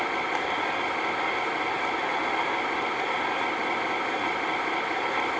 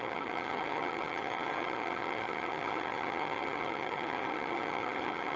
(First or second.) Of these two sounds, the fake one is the second